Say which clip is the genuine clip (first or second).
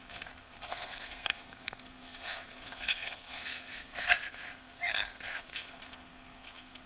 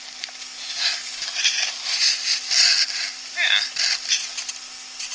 second